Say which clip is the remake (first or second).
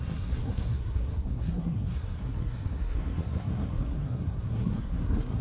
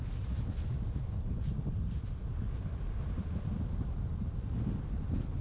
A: first